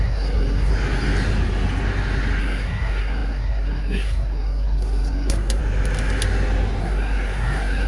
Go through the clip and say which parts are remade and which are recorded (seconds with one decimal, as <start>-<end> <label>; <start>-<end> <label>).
0.0-0.7 remade; 0.7-2.4 recorded; 2.4-5.6 remade; 5.6-6.8 recorded; 6.8-7.9 remade